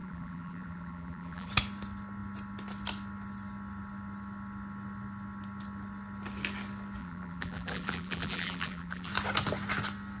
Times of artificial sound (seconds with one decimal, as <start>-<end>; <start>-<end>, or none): 0.0-1.5; 7.0-9.1